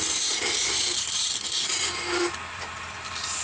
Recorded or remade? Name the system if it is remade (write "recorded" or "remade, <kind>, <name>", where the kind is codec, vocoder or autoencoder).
recorded